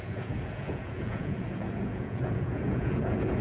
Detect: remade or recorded remade